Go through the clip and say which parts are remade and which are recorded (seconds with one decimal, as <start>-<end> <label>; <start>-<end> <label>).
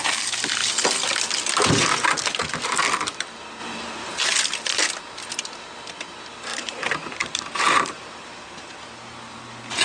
0.0-3.6 recorded; 3.6-4.2 remade; 4.2-6.5 recorded; 6.5-8.5 remade; 8.5-9.8 recorded